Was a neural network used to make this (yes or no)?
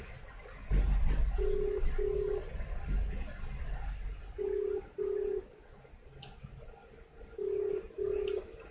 no